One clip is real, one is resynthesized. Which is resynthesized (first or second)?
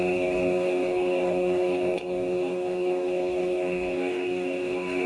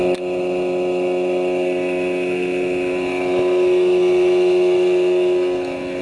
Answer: first